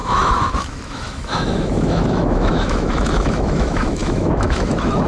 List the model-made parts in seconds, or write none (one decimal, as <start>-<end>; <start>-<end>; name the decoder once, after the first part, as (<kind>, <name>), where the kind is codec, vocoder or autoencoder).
0.0-5.1 (autoencoder, DAC-VAE)